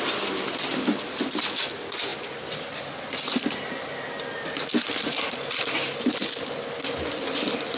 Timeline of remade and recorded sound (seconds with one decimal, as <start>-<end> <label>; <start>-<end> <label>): 0.0-7.8 recorded